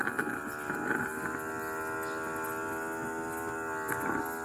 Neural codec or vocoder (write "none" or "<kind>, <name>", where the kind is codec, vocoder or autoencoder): none